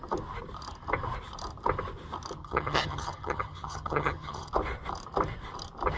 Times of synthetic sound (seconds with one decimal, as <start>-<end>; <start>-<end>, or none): 2.4-4.5